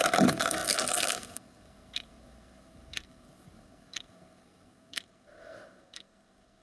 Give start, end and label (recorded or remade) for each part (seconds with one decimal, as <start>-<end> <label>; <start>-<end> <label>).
0.0-6.6 remade